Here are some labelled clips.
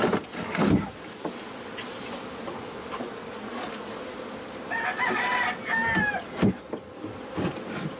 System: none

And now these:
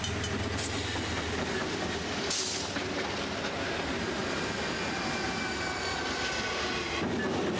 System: none